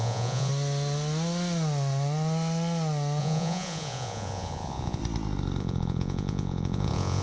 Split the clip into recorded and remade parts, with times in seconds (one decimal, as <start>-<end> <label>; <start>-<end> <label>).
0.0-0.5 remade; 0.5-3.2 recorded; 3.2-5.0 remade; 5.0-5.6 recorded; 5.6-7.2 remade

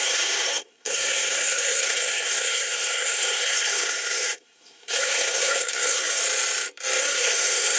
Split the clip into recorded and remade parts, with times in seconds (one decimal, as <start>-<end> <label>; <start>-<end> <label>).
0.0-6.2 remade; 6.2-7.0 recorded; 7.0-7.8 remade

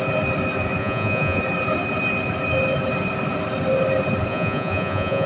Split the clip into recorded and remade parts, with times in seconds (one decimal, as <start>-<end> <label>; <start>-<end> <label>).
0.0-0.8 recorded; 0.8-1.4 remade; 1.4-4.3 recorded; 4.3-5.3 remade

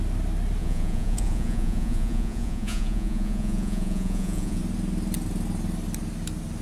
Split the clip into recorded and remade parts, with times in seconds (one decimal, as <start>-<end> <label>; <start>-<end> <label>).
0.0-0.6 recorded; 0.6-4.6 remade; 4.6-6.6 recorded

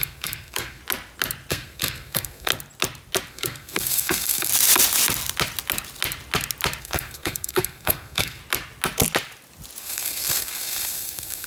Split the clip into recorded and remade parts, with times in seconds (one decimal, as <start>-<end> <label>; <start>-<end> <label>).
0.0-0.8 remade; 0.8-1.5 recorded; 1.5-2.5 remade; 2.5-3.3 recorded; 3.3-4.5 remade; 4.5-6.8 recorded; 6.8-8.4 remade; 8.4-9.8 recorded; 9.8-11.5 remade

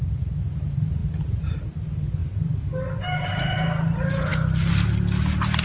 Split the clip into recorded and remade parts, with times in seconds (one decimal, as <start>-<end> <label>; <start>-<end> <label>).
0.0-5.6 recorded

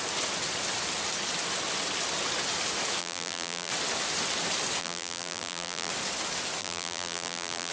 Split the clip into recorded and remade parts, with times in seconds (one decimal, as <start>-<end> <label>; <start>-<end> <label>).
0.0-3.0 recorded; 3.0-3.7 remade; 3.7-4.8 recorded; 4.8-5.9 remade; 5.9-6.6 recorded; 6.6-7.7 remade